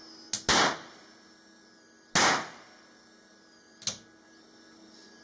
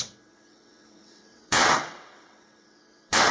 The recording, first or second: first